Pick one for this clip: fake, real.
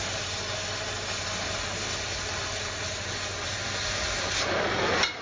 real